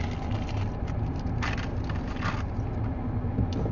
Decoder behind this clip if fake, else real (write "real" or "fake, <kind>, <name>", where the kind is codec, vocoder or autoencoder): real